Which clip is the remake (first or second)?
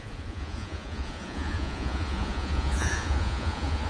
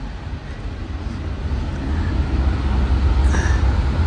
first